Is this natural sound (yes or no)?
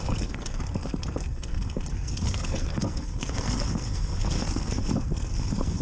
no